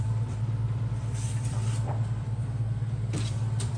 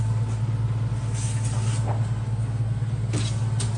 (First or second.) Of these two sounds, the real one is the second